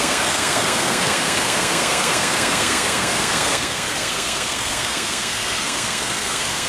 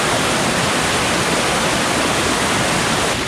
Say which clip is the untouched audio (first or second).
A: second